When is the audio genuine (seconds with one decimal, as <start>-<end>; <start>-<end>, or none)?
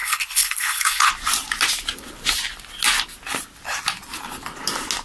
1.1-5.0